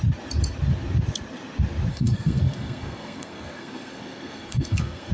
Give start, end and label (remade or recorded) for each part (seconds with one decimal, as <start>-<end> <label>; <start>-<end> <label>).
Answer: 0.0-1.9 recorded; 1.9-5.1 remade